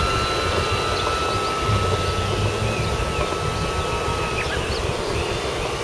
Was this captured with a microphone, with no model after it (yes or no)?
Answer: yes